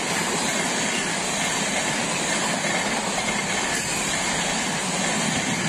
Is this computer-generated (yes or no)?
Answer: yes